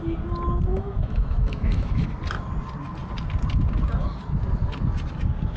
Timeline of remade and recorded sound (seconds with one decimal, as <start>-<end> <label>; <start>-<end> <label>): 0.0-0.7 recorded; 0.7-2.1 remade; 2.1-5.6 recorded